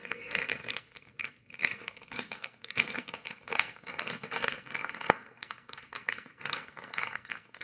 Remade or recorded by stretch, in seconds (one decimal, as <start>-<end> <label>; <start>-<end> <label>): 0.0-7.6 remade